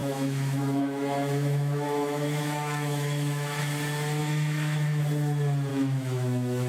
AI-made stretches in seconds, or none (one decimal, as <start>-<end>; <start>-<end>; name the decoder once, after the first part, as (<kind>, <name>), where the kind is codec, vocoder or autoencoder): 0.0-3.6 (autoencoder, DAC-VAE); 4.2-5.0; 5.7-6.7

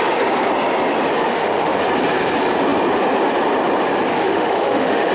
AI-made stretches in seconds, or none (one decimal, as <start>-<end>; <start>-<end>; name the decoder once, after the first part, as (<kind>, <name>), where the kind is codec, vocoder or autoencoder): 1.3-1.8 (autoencoder, DAC-VAE); 4.1-5.1